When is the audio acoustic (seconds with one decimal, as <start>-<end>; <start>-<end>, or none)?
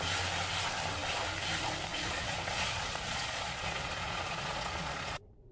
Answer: 0.0-1.9